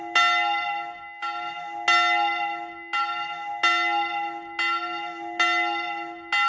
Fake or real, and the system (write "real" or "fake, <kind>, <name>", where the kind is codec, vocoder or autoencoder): real